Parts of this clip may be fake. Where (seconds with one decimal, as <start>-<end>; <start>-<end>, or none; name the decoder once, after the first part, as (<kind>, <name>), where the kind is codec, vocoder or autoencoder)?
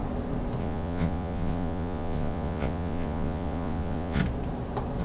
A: 0.6-4.2 (vocoder, Vocos)